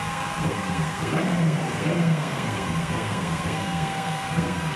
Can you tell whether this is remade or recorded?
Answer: remade